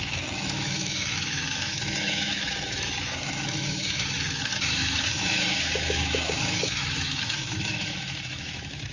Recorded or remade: remade